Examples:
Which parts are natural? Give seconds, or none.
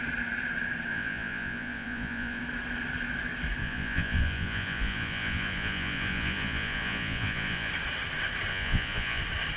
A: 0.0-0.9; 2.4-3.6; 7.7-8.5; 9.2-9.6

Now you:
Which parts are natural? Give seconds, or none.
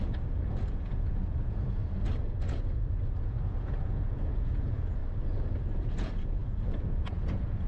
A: 1.8-2.5; 5.0-5.6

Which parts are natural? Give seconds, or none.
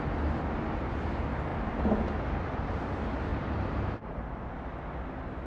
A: 0.0-1.5; 2.1-3.3; 4.5-5.5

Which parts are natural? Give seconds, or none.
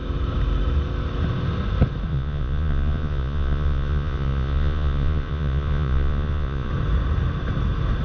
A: 0.0-2.1; 6.7-8.0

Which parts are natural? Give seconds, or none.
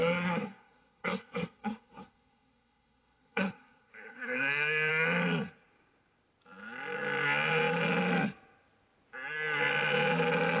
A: 4.9-10.6